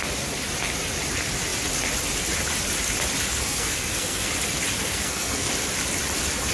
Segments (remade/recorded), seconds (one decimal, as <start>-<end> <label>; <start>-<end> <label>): 0.0-3.3 recorded; 3.3-4.3 remade; 4.3-4.8 recorded; 4.8-5.5 remade; 5.5-6.5 recorded